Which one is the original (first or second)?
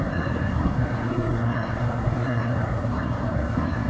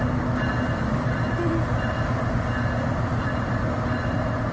second